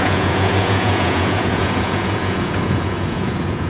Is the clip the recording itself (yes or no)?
no